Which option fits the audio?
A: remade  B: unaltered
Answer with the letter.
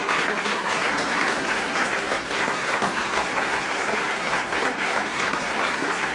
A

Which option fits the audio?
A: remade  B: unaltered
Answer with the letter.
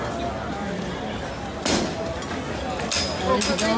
B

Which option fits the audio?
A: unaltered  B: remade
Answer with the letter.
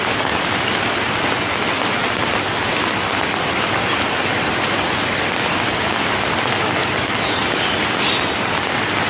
A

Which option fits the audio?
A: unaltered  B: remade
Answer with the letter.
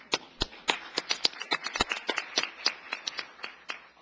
A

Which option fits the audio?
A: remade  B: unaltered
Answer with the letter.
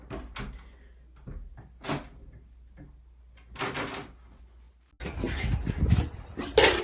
B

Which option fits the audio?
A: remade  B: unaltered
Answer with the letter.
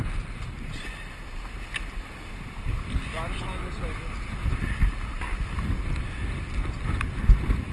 B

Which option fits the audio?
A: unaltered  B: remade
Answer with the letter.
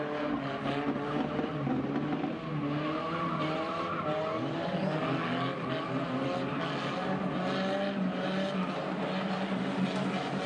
A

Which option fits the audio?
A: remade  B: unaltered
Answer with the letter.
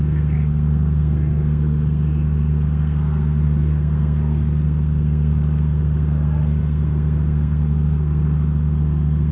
A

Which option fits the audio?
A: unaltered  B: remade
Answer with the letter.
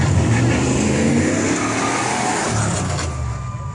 A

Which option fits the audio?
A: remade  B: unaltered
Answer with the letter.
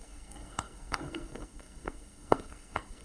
A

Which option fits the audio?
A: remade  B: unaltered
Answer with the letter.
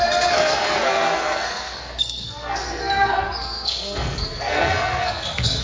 A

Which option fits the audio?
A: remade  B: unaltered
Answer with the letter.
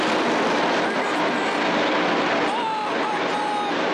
B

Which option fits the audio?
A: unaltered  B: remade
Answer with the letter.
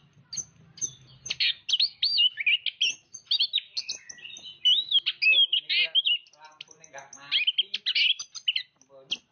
A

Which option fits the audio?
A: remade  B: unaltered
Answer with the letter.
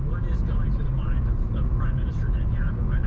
B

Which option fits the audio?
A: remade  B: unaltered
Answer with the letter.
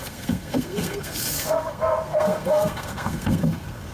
A